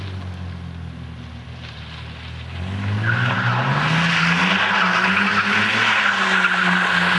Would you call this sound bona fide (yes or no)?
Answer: yes